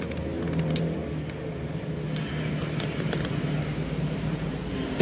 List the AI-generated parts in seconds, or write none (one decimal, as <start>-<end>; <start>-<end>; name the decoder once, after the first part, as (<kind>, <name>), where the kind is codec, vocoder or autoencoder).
0.0-1.0 (vocoder, BigVGAN v2); 4.0-5.0

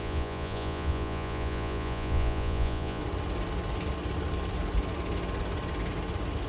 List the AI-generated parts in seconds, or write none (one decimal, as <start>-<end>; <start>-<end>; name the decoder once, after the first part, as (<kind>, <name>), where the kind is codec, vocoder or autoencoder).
0.0-3.0 (vocoder, Vocos)